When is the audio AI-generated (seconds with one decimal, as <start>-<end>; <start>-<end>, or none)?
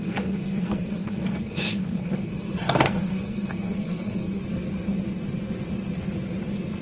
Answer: 0.0-4.4